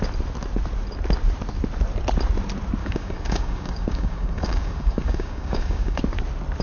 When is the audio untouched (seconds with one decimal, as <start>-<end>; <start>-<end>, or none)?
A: 0.0-2.8; 6.0-6.6